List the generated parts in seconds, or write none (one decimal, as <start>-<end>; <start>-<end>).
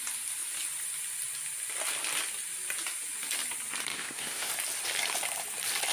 3.9-4.5